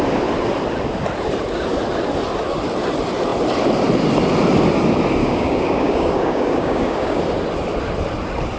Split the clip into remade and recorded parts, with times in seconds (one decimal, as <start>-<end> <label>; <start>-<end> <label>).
0.0-5.2 recorded; 5.2-7.2 remade; 7.2-8.6 recorded